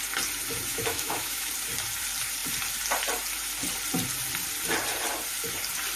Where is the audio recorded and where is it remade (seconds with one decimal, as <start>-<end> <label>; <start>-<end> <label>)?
0.0-0.7 recorded; 0.7-1.5 remade; 1.5-6.0 recorded